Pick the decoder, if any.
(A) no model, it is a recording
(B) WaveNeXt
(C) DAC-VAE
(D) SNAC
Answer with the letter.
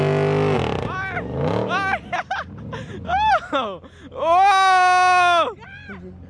A